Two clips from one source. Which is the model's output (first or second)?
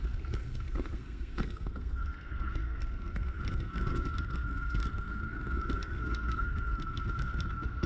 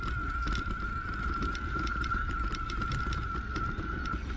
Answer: first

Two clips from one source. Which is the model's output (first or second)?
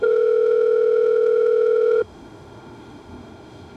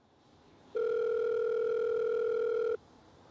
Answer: first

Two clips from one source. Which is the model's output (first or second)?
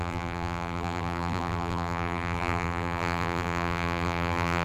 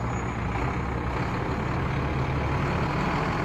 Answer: first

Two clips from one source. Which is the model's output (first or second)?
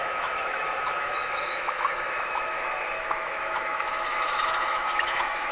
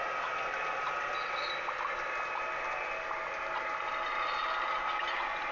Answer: first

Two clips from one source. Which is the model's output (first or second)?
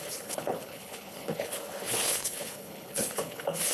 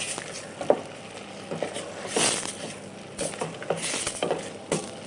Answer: first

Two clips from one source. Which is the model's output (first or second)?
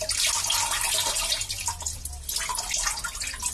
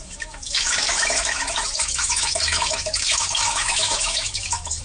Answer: second